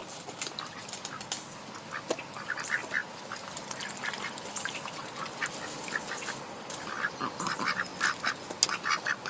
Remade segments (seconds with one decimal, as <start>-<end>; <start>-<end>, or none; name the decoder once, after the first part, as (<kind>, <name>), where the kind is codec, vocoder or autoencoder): none